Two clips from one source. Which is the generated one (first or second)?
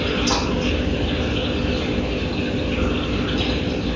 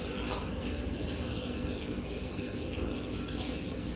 second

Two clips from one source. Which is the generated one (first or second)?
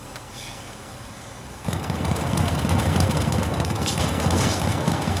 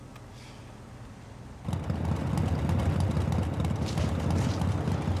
first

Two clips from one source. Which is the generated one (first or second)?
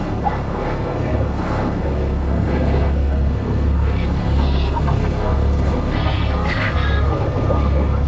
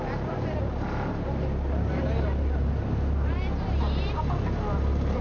first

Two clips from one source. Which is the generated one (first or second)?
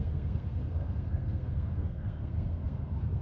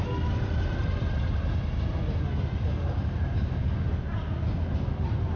first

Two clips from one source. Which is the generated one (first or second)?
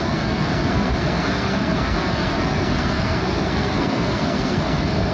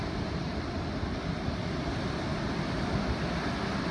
first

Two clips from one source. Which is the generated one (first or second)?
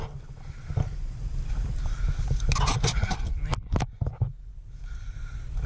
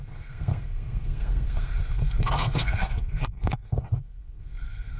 second